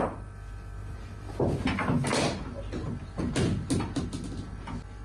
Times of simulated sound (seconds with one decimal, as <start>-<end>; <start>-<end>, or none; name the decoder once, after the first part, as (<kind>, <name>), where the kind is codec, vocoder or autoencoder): none

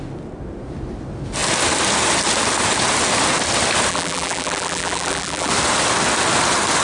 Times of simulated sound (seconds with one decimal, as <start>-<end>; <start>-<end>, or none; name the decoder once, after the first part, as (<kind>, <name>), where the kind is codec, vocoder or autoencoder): 3.9-5.5 (vocoder, BigVGAN v2)

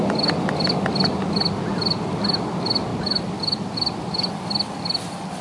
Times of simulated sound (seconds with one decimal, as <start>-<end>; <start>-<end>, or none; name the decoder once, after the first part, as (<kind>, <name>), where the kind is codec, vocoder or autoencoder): none

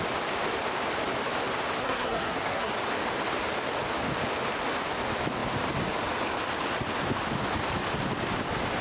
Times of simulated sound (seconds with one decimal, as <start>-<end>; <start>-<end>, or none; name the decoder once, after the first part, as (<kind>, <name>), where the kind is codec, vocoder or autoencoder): 1.8-2.7 (codec, SNAC)

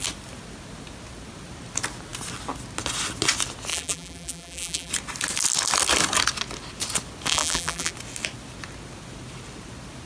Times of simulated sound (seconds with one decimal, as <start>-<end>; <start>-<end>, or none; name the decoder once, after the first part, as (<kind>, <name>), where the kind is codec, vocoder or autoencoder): 3.7-4.9 (vocoder, BigVGAN v2); 7.3-7.9

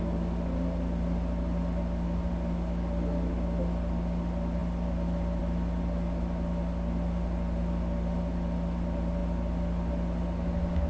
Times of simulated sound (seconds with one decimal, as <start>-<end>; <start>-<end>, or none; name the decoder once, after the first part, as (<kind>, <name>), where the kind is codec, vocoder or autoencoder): none

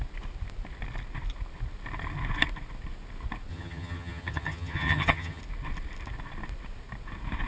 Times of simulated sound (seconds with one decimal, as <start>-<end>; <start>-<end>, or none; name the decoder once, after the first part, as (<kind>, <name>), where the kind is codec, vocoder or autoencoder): 3.5-5.4 (vocoder, HiFi-GAN)

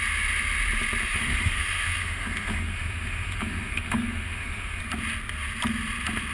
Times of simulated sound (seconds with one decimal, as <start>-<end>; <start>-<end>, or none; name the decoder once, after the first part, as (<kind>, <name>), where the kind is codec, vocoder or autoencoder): 1.0-4.8 (autoencoder, DAC-VAE)